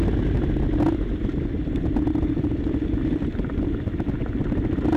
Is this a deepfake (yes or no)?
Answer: no